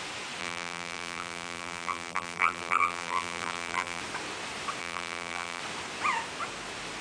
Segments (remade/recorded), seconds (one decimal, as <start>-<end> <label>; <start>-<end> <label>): 0.0-0.4 recorded; 0.4-4.0 remade; 4.0-4.8 recorded; 4.8-5.6 remade; 5.6-7.0 recorded